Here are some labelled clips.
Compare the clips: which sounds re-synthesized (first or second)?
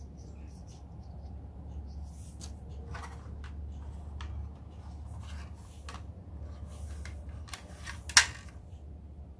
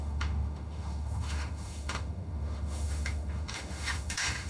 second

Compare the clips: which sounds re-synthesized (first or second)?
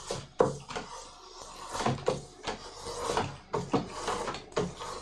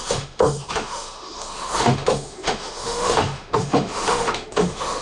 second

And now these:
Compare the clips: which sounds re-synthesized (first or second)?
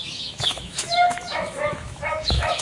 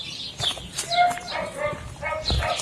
first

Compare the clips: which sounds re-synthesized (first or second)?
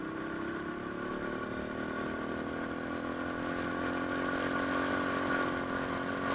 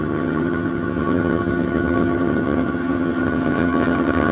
second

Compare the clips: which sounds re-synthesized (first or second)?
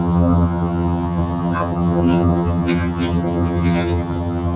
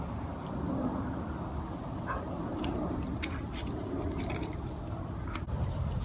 first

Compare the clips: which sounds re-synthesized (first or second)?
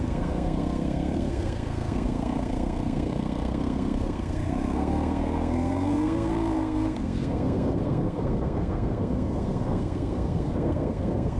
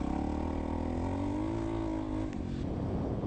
first